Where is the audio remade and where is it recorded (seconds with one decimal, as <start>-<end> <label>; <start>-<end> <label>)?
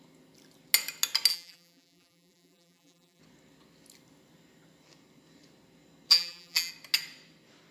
0.0-1.3 recorded; 1.3-3.2 remade; 3.2-6.1 recorded; 6.1-6.7 remade; 6.7-7.7 recorded